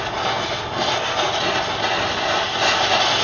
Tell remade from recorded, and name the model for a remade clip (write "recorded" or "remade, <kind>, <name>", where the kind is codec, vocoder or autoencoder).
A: recorded